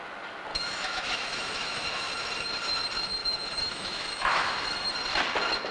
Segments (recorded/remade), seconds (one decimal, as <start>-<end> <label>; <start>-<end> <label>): 0.0-0.5 recorded; 0.5-2.0 remade; 2.0-3.2 recorded; 3.2-4.9 remade; 4.9-5.7 recorded